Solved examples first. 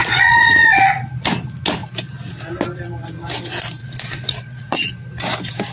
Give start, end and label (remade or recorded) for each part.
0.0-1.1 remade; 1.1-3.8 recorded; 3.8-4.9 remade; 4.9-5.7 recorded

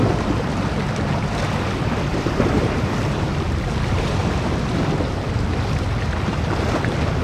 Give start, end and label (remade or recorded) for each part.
0.0-2.1 recorded; 2.1-3.3 remade; 3.3-7.2 recorded

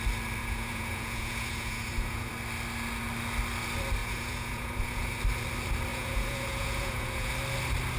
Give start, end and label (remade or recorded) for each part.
0.0-0.4 recorded; 0.4-2.3 remade; 2.3-4.0 recorded; 4.0-5.2 remade; 5.2-5.9 recorded; 5.9-7.3 remade; 7.3-8.0 recorded